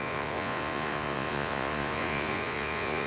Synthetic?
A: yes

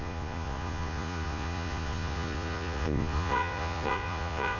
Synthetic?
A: yes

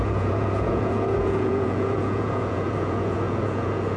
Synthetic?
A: yes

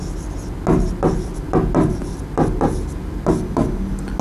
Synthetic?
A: no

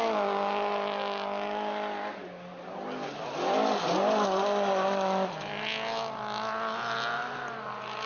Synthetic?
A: no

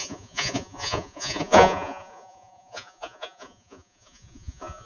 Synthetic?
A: yes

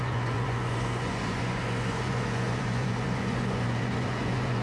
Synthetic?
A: yes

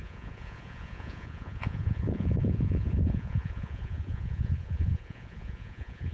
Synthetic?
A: yes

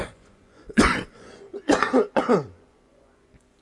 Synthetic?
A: yes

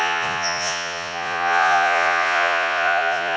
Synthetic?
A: yes